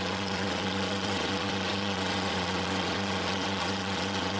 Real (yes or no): no